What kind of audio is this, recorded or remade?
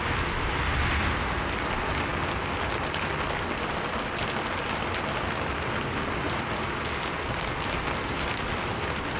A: recorded